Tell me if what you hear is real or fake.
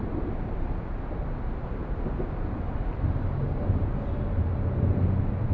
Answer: real